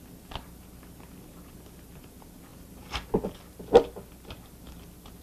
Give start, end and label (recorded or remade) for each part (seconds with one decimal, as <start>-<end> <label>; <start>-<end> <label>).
0.0-2.5 recorded; 2.5-3.1 remade; 3.1-5.2 recorded